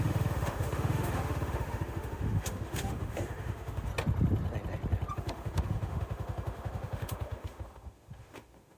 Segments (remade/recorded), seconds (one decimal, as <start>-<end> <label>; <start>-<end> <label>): 0.0-3.9 remade; 3.9-5.1 recorded; 5.1-8.8 remade